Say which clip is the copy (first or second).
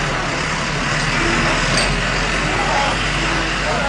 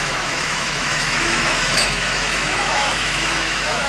second